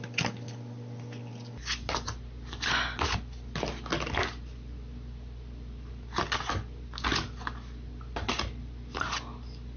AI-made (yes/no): no